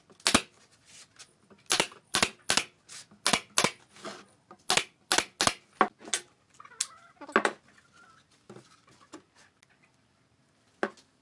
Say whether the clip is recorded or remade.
recorded